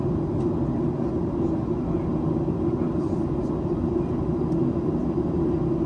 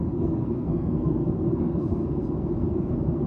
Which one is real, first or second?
first